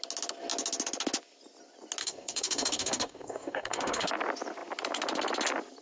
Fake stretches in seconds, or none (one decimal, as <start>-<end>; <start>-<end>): 2.0-4.1